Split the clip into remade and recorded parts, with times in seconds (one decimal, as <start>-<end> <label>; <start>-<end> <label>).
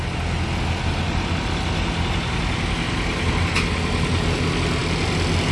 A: 0.0-5.5 recorded